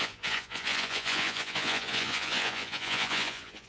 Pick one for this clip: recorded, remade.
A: remade